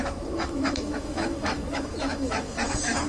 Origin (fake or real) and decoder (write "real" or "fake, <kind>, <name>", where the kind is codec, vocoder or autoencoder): fake, autoencoder, DAC-VAE